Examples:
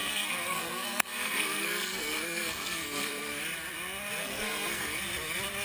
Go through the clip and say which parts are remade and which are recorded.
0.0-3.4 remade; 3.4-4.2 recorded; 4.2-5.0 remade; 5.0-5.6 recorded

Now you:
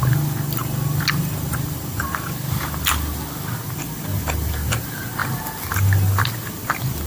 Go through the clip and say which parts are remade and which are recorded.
0.0-7.1 recorded

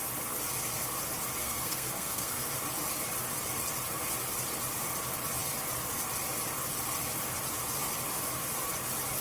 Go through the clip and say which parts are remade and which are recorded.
0.0-1.4 recorded; 1.4-2.6 remade; 2.6-9.2 recorded